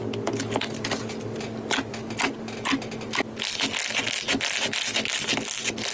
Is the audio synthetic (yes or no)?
no